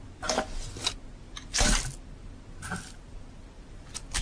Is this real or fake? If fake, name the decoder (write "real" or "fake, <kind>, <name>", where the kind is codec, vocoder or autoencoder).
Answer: real